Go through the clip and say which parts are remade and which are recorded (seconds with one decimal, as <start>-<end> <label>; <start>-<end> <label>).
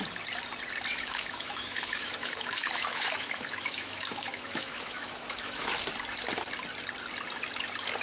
0.0-0.9 recorded; 0.9-5.7 remade; 5.7-8.0 recorded